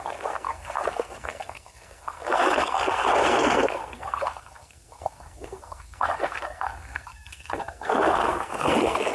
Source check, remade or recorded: remade